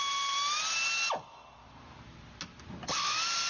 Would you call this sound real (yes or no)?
yes